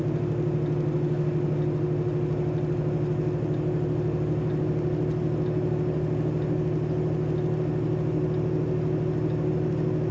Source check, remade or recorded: recorded